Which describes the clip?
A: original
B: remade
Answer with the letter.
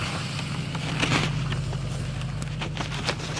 A